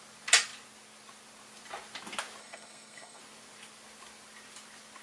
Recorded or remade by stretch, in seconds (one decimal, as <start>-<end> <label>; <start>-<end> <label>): 0.0-2.4 recorded; 2.4-3.2 remade; 3.2-5.0 recorded